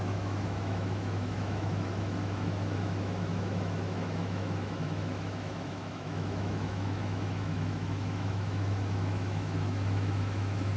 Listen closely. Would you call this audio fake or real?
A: fake